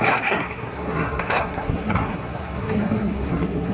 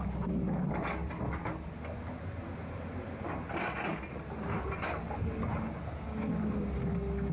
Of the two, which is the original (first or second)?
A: second